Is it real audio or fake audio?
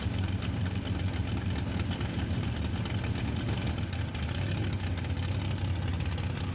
real